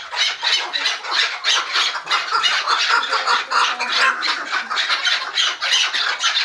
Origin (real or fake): real